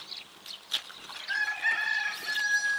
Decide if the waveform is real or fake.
real